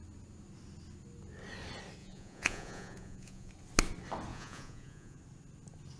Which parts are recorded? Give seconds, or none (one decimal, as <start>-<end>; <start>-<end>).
0.0-2.0; 3.5-4.3; 5.2-6.0